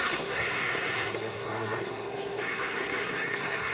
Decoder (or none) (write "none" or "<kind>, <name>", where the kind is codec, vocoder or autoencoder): codec, SNAC